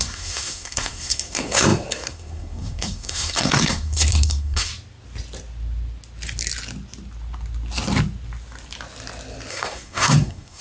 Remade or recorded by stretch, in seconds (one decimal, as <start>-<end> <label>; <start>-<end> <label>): 0.0-4.7 remade; 4.7-9.5 recorded; 9.5-10.6 remade